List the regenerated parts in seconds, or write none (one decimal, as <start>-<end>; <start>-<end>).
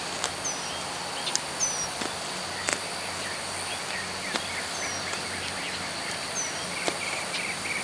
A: none